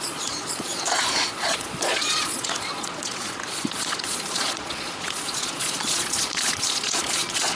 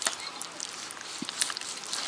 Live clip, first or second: second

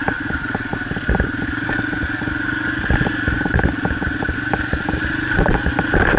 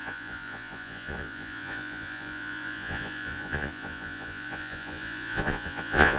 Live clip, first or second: first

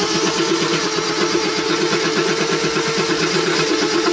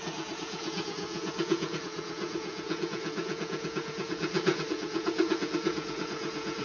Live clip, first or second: first